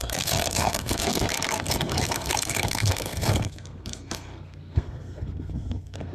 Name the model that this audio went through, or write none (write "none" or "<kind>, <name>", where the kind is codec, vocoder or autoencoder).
codec, SNAC